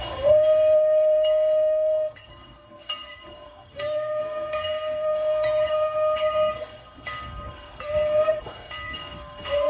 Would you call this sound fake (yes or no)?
yes